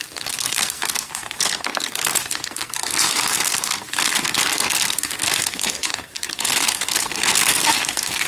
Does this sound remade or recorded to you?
remade